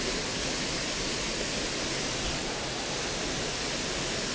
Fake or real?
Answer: real